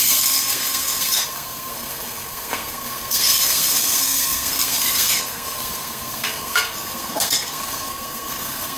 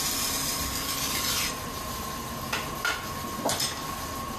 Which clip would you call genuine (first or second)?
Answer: second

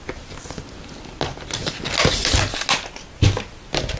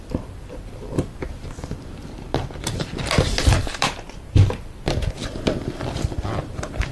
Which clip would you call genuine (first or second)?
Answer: first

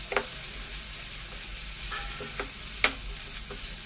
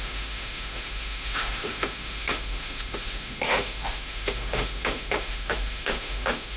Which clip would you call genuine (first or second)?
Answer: first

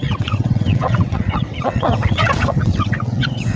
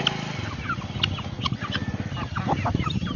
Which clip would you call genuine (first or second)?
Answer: second